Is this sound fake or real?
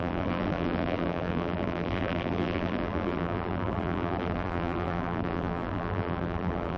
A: fake